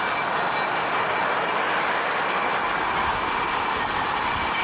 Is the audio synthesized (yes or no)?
no